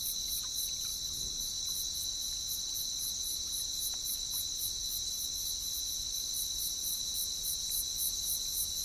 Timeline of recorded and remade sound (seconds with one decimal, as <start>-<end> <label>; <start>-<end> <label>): 0.0-8.8 recorded